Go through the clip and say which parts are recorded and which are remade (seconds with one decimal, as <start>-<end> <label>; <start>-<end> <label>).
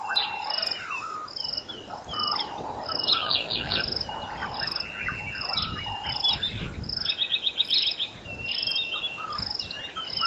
0.0-3.2 recorded; 3.2-3.8 remade; 3.8-10.3 recorded